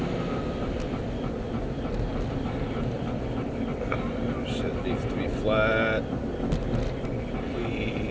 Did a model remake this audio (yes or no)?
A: no